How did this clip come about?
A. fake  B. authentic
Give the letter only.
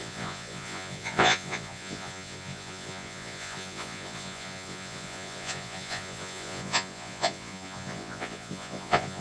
A